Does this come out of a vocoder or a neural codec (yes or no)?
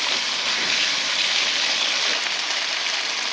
no